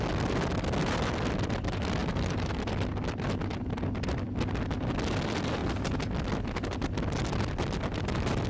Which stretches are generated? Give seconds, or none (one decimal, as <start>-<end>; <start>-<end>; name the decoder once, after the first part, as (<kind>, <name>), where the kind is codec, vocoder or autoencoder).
2.0-4.3 (vocoder, BigVGAN v2)